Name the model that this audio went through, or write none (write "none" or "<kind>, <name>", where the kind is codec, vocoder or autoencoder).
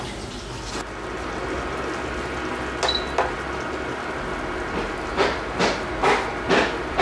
none